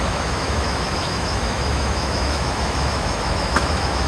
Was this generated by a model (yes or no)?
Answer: yes